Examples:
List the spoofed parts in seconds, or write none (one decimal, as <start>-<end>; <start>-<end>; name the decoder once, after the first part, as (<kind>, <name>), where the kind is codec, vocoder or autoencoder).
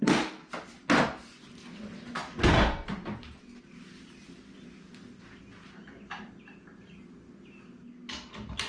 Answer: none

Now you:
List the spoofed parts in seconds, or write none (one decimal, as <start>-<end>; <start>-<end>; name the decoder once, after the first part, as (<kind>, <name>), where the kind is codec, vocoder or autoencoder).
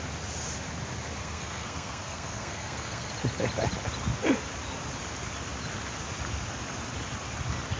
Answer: 1.2-3.1 (codec, SNAC)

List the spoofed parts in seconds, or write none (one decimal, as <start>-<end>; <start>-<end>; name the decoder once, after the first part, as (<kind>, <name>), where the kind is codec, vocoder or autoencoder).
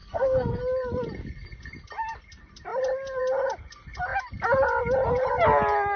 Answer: 0.0-0.6 (codec, SNAC)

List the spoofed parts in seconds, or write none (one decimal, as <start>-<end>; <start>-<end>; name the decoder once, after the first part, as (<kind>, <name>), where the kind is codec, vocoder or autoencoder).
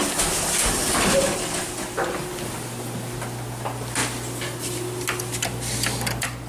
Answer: none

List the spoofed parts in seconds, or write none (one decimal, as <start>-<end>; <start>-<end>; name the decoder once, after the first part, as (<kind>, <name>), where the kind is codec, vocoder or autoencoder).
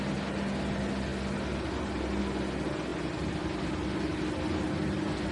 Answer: none